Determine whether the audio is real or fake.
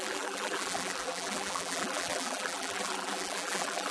fake